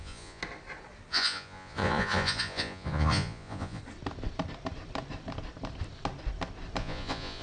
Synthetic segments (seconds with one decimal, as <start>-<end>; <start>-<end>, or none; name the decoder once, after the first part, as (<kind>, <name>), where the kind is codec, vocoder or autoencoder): 0.0-0.4 (vocoder, Vocos); 1.1-3.8; 6.8-7.4